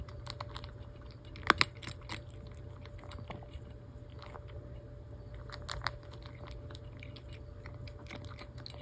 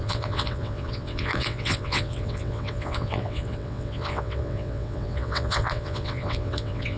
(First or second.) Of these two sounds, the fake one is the second